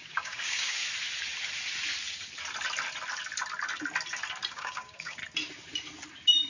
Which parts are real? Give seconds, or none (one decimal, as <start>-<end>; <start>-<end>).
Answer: 0.8-4.5; 5.2-6.5